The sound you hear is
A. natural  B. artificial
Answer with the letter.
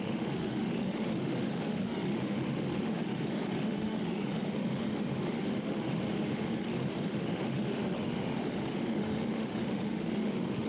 B